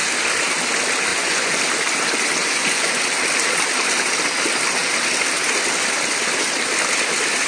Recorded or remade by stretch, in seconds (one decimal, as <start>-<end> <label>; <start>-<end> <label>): 0.0-1.1 recorded; 1.1-1.6 remade; 1.6-2.4 recorded; 2.4-3.0 remade; 3.0-7.5 recorded